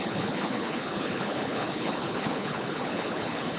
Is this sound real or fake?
fake